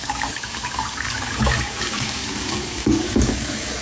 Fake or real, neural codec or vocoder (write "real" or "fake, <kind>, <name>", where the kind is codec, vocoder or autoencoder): fake, codec, DAC